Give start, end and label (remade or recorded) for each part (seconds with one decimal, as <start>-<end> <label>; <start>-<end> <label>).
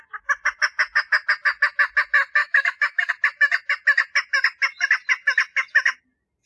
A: 0.0-2.4 recorded; 2.4-3.1 remade; 3.1-6.5 recorded